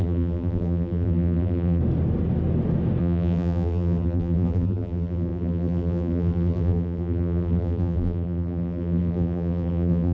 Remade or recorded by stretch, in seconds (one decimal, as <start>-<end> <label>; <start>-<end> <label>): 0.0-1.8 remade; 1.8-3.0 recorded; 3.0-10.1 remade